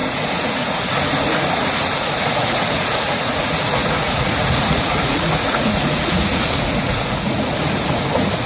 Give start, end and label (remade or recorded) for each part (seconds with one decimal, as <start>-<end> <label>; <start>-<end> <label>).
0.0-8.5 remade